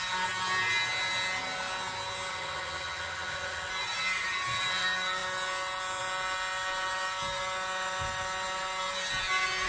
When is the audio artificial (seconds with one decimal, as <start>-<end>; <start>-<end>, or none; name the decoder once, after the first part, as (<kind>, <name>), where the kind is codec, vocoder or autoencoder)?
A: 2.3-3.7 (vocoder, HiFi-GAN)